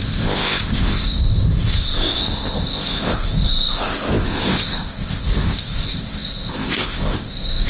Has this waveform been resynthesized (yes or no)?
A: yes